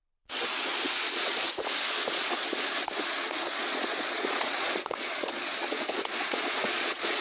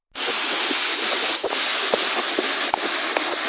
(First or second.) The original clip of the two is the second